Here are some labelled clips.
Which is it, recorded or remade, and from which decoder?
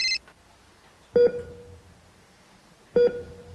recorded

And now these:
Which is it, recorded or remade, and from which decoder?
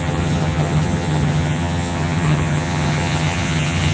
remade, vocoder, HiFi-GAN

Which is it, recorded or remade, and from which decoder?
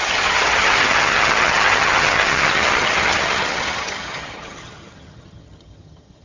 remade, vocoder, HiFi-GAN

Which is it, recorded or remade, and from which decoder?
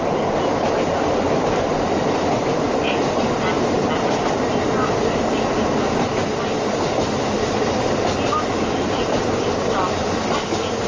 recorded